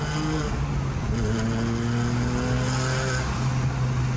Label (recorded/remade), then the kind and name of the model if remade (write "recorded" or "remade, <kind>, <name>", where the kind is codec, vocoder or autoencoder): recorded